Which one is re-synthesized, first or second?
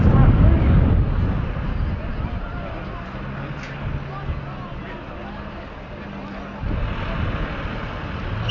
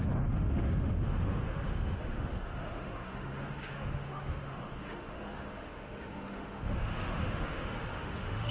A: second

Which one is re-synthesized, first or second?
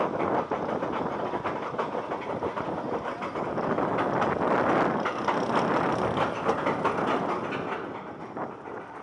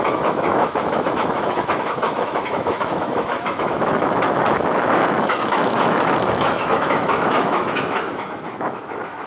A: second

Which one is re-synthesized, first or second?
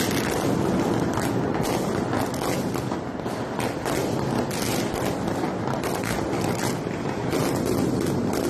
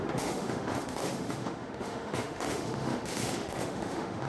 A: second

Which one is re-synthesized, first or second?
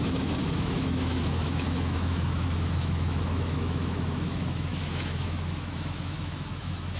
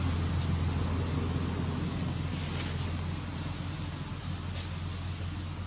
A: first